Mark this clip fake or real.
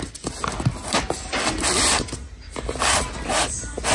real